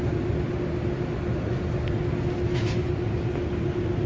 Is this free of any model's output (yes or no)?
yes